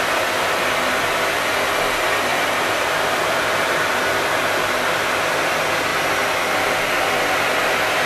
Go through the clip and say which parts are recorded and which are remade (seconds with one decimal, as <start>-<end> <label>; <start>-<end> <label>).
0.0-2.3 recorded; 2.3-4.5 remade; 4.5-8.1 recorded